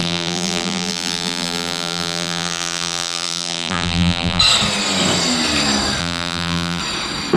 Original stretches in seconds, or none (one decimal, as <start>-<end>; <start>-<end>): 4.4-6.0; 6.8-7.4